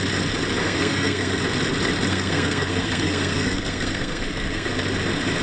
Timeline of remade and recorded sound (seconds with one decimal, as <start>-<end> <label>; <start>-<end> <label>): 0.0-0.6 recorded; 0.6-1.4 remade; 1.4-2.1 recorded; 2.1-4.7 remade; 4.7-5.4 recorded